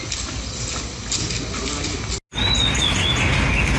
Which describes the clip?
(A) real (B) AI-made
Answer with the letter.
A